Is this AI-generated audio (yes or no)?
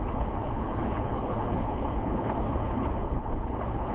yes